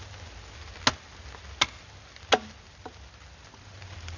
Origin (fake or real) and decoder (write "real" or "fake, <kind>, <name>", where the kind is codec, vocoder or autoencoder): real